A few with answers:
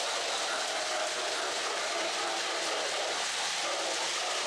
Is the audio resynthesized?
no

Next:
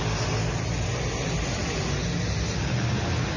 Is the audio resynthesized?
no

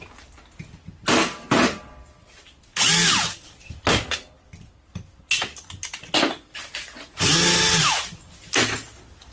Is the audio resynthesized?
no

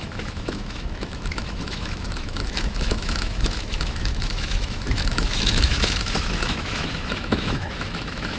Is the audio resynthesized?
yes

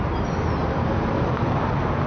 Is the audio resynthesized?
no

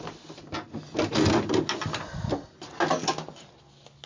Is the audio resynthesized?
no